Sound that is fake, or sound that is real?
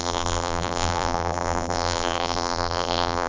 fake